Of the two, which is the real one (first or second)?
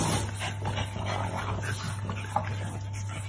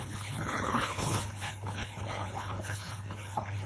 first